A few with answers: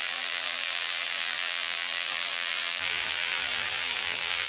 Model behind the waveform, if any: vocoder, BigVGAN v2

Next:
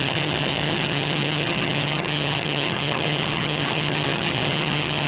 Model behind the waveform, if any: vocoder, HiFi-GAN